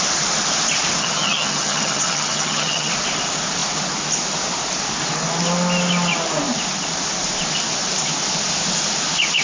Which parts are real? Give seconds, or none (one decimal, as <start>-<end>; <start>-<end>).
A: 0.0-1.0; 2.9-9.4